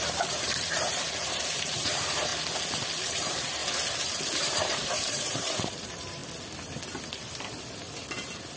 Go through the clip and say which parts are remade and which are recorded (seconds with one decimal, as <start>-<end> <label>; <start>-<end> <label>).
0.0-2.3 remade; 2.3-3.0 recorded; 3.0-3.6 remade; 3.6-4.4 recorded; 4.4-6.2 remade; 6.2-8.6 recorded